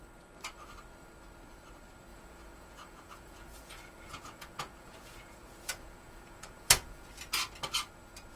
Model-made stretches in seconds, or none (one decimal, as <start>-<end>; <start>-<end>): 2.1-7.1